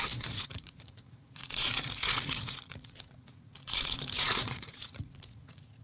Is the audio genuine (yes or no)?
no